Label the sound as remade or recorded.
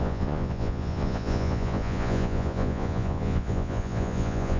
remade